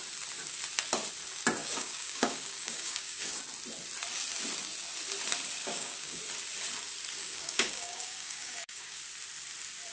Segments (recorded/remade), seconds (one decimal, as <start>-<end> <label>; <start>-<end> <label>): 0.0-1.6 recorded; 1.6-3.4 remade; 3.4-5.6 recorded; 5.6-6.2 remade; 6.2-7.2 recorded; 7.2-9.0 remade; 9.0-9.9 recorded